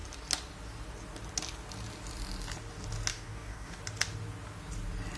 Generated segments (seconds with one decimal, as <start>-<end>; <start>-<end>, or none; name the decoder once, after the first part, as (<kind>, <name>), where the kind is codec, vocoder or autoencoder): 3.1-3.8 (codec, DAC)